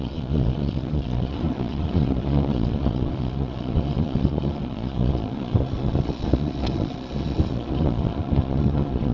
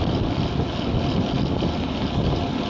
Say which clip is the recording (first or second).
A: second